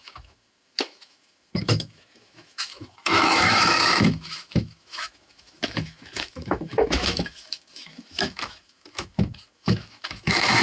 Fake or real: fake